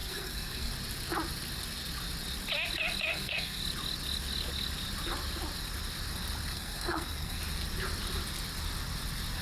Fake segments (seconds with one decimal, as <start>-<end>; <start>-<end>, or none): 0.0-0.7; 3.1-3.6; 6.5-7.4